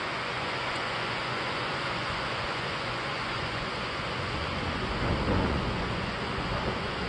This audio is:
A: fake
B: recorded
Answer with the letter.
A